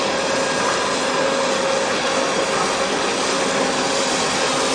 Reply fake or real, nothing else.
real